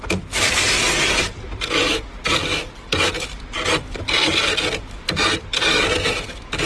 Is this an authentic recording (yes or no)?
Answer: yes